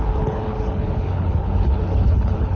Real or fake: fake